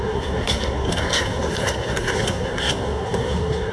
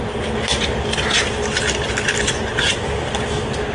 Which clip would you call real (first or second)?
second